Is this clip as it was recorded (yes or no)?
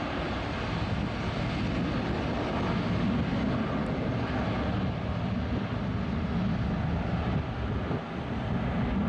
yes